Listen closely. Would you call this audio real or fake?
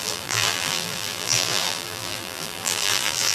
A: fake